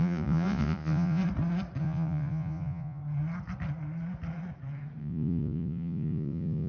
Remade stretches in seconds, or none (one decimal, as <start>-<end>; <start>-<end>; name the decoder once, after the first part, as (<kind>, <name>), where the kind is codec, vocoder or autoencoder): 0.0-1.2 (vocoder, Vocos); 1.8-3.0; 5.0-6.7